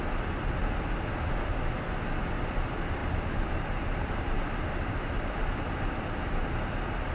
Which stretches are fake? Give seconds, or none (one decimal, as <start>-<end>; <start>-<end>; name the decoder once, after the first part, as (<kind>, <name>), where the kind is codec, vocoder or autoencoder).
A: 3.0-6.0 (vocoder, BigVGAN v2)